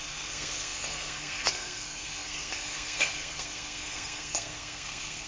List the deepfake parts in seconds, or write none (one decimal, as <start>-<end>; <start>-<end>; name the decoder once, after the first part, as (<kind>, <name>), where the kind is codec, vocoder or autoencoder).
0.0-5.3 (codec, SNAC)